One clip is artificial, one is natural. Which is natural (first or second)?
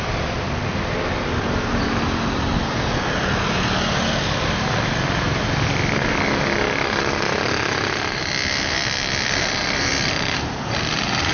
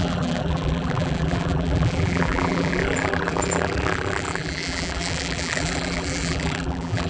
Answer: first